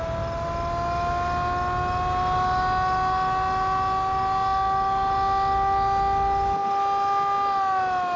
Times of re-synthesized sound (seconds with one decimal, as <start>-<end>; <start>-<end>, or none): none